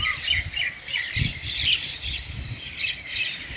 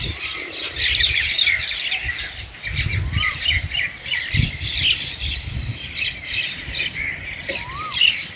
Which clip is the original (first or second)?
first